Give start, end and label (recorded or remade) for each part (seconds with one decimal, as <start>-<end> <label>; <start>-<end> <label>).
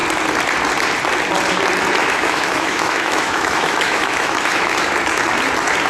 0.0-2.0 recorded; 2.0-4.8 remade; 4.8-5.9 recorded